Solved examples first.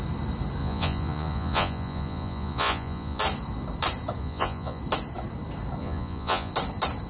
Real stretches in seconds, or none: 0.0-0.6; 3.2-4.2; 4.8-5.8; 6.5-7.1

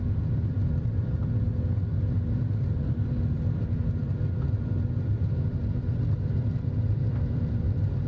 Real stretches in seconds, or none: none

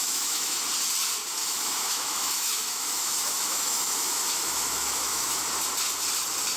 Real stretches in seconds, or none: 0.6-1.4; 5.4-6.6

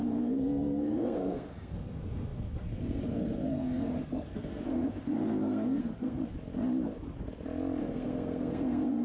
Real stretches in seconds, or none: 6.2-7.8

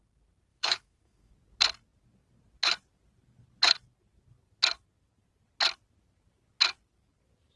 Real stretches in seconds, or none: 0.0-0.5; 1.3-7.6

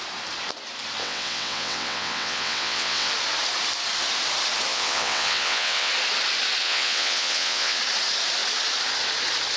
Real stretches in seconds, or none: 0.0-1.0; 3.1-4.7; 5.9-6.6; 7.8-9.6

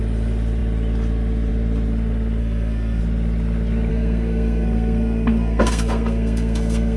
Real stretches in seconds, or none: 0.0-2.4; 3.0-3.9